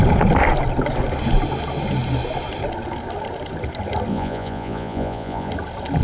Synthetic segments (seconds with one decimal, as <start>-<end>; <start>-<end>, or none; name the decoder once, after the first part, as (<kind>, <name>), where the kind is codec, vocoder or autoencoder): 4.1-5.5 (vocoder, Vocos)